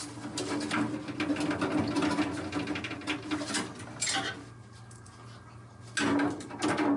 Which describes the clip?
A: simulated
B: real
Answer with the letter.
B